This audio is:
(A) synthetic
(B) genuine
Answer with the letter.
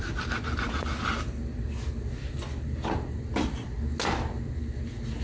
B